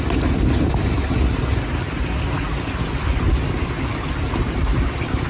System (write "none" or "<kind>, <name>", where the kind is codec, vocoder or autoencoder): none